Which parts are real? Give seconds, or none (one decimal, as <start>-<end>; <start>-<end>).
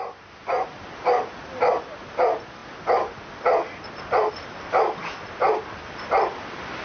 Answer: 0.0-6.8